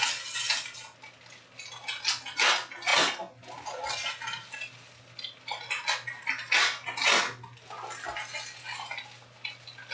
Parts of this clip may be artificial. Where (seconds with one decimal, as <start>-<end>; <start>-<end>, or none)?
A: none